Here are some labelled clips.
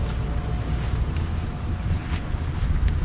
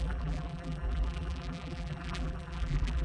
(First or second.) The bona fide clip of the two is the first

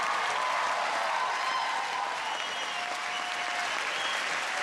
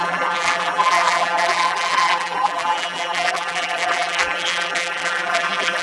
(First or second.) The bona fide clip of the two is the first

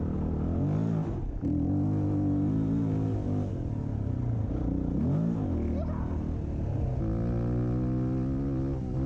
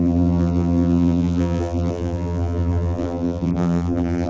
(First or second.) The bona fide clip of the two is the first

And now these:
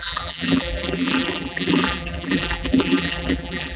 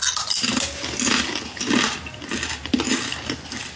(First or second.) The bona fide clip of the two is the second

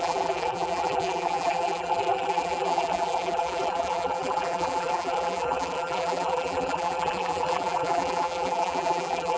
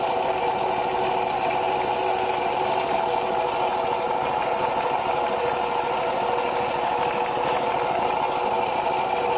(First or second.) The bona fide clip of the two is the second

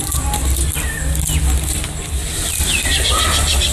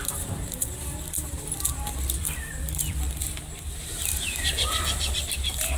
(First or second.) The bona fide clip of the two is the first